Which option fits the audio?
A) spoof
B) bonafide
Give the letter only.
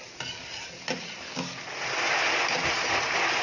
B